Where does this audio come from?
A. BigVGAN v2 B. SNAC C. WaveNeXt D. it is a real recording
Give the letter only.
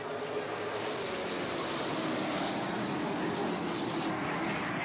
D